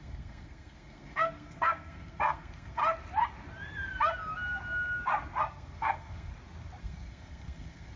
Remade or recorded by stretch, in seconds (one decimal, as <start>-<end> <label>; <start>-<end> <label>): 0.0-2.8 remade; 2.8-5.4 recorded; 5.4-6.3 remade; 6.3-6.8 recorded; 6.8-8.0 remade